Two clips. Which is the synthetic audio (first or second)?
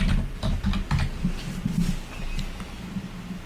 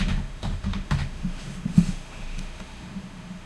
second